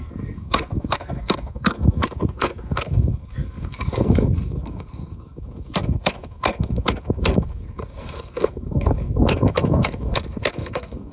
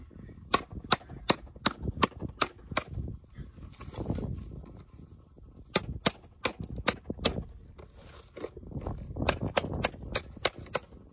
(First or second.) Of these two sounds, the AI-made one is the first